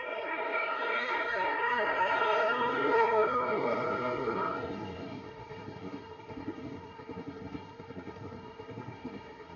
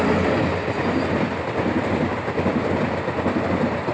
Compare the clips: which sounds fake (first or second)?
first